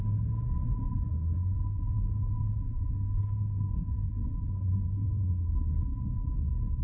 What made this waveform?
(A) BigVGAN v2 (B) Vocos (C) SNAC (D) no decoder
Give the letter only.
C